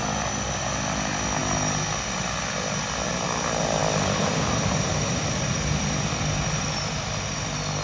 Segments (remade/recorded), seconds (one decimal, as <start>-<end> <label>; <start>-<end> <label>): 0.0-3.8 recorded; 3.8-4.9 remade; 4.9-7.8 recorded